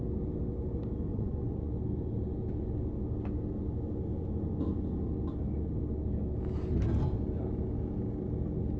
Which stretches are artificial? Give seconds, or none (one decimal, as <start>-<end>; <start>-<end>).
1.1-1.7